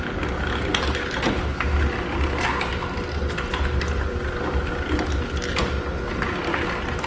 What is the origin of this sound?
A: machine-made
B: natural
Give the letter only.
B